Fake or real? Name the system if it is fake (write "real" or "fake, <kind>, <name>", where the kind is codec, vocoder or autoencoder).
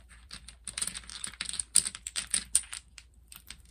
fake, vocoder, BigVGAN v2